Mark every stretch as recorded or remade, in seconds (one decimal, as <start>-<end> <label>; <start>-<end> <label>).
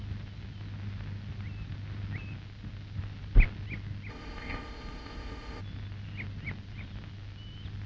0.0-4.1 recorded; 4.1-5.6 remade; 5.6-7.9 recorded